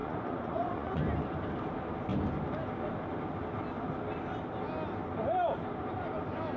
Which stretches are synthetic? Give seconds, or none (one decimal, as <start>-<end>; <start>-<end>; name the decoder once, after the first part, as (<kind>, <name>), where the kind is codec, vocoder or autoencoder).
0.0-1.0 (vocoder, Vocos)